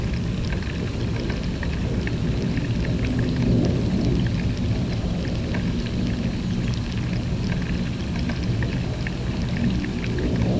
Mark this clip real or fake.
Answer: real